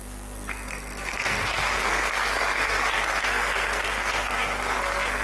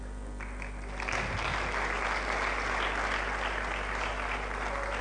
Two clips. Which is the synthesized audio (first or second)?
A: first